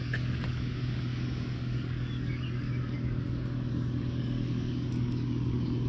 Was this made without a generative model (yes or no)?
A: no